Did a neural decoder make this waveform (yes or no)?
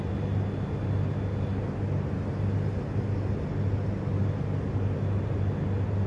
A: no